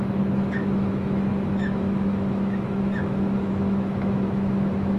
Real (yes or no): no